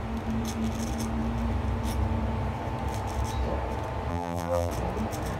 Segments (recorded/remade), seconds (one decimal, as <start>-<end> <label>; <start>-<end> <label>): 0.0-4.1 recorded; 4.1-4.7 remade; 4.7-5.4 recorded